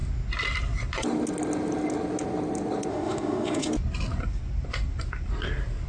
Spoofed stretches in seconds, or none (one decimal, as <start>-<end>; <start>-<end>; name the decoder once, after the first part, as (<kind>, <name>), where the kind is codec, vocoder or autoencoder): 2.9-3.7 (autoencoder, DAC-VAE)